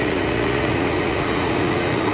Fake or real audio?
fake